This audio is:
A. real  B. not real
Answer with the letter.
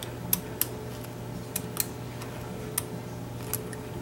A